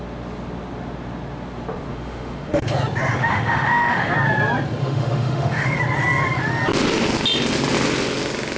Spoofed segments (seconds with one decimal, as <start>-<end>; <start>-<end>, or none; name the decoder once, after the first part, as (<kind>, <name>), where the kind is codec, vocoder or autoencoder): 1.9-2.7 (autoencoder, DAC-VAE); 3.2-4.1; 4.8-5.8